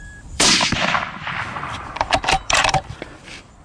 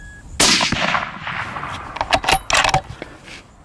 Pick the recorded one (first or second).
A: second